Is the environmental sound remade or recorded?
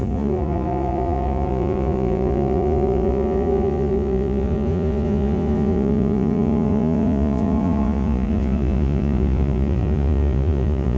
remade